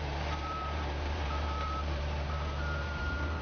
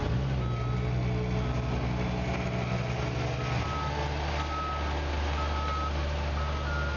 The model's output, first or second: first